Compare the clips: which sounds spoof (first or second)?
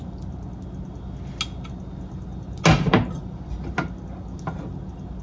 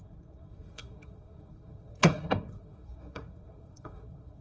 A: second